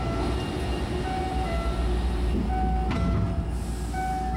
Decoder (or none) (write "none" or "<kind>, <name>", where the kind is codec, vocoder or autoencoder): none